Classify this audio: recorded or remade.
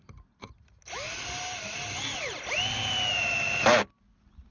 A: recorded